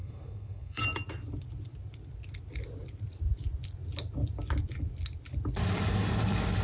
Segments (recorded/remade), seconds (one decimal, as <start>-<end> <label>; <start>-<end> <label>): 0.0-0.8 remade; 0.8-6.6 recorded

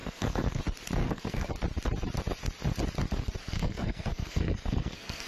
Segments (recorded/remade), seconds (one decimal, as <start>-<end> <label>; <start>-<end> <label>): 0.0-0.6 remade; 0.6-1.0 recorded; 1.0-1.5 remade; 1.5-3.4 recorded; 3.4-5.3 remade

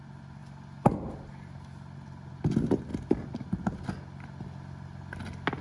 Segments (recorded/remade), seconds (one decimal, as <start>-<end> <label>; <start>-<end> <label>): 0.0-5.6 recorded

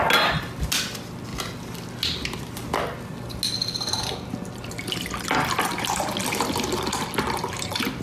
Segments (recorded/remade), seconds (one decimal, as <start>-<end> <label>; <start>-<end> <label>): 0.0-8.0 recorded

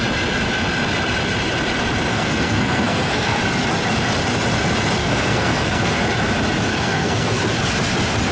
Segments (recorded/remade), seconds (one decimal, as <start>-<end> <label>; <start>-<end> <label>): 0.0-2.1 recorded; 2.1-3.4 remade; 3.4-5.0 recorded; 5.0-6.0 remade; 6.0-6.7 recorded; 6.7-7.4 remade; 7.4-8.3 recorded

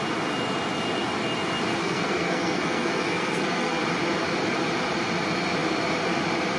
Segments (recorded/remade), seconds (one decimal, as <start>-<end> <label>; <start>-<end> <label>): 0.0-1.8 recorded; 1.8-3.8 remade; 3.8-6.6 recorded